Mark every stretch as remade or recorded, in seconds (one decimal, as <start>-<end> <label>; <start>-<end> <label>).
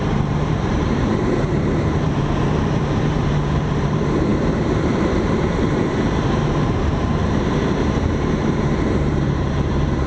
0.0-10.1 remade